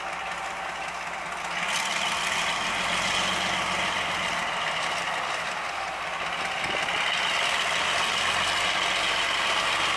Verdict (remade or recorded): recorded